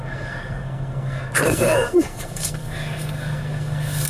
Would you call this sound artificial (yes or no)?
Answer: yes